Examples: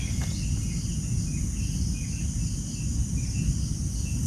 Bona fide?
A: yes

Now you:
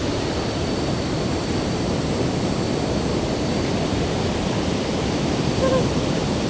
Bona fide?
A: no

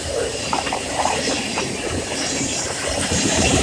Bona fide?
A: no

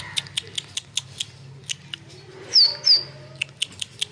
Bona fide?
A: yes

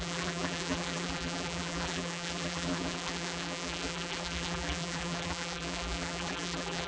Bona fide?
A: no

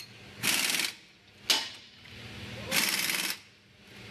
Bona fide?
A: yes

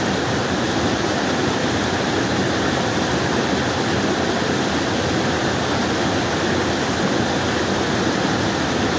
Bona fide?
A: yes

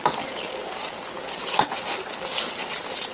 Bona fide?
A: yes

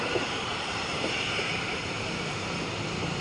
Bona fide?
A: no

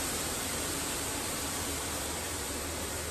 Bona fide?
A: no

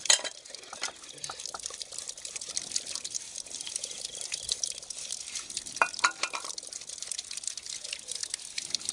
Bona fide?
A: yes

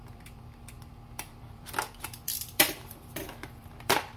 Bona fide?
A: no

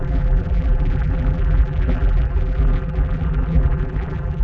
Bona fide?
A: no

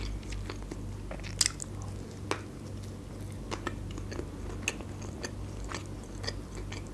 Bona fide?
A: yes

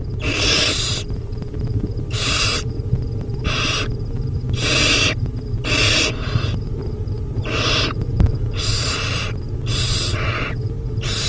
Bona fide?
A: no